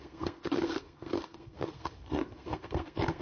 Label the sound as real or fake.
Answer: fake